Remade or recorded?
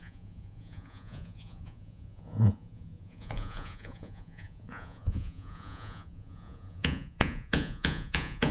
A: remade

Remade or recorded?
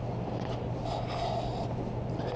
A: recorded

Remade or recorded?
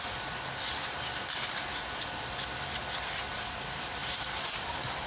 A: recorded